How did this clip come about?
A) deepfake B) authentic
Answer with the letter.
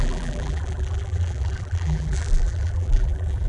A